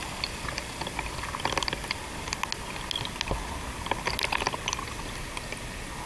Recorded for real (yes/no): yes